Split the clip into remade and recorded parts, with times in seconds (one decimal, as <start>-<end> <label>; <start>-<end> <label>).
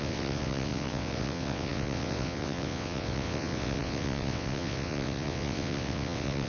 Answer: 0.0-6.5 remade